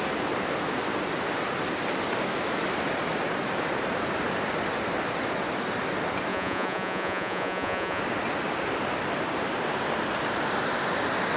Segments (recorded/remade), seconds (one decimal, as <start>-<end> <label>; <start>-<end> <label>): 0.0-6.3 recorded; 6.3-8.0 remade; 8.0-11.4 recorded